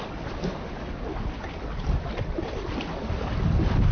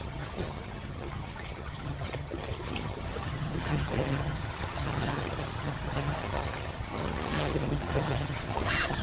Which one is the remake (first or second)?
second